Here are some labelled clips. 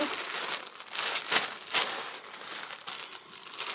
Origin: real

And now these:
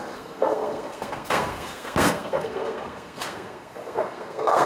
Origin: fake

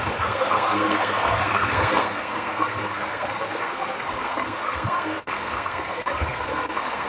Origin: fake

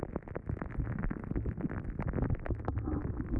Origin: real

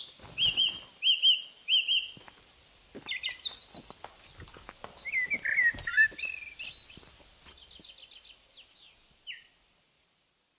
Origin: real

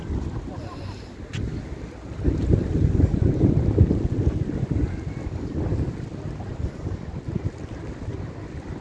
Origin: real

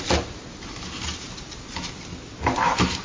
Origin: real